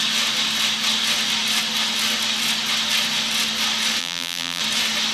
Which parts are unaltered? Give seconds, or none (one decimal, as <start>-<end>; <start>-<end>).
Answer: 0.0-4.0; 4.6-5.1